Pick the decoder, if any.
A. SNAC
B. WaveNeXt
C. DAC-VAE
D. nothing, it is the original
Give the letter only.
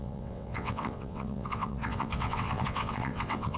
B